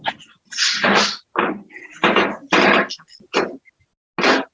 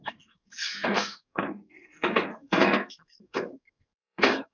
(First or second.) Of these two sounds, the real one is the first